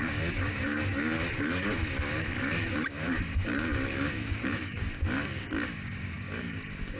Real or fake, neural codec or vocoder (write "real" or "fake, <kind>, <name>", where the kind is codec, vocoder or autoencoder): fake, codec, DAC